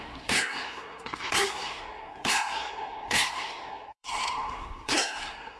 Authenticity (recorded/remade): remade